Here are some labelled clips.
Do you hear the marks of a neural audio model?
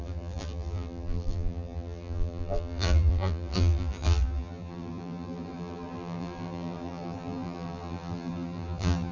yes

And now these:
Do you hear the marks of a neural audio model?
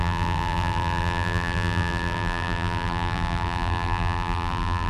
yes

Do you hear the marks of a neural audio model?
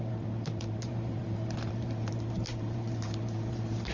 yes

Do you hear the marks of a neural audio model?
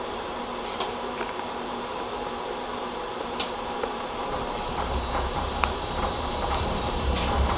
yes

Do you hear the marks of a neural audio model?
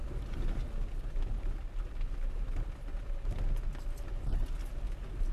no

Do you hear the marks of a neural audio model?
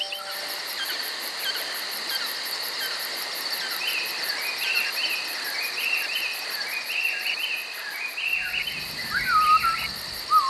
no